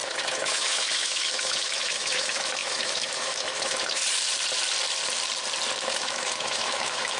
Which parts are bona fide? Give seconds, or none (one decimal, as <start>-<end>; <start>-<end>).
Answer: 4.0-5.8